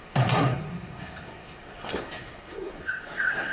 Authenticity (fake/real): fake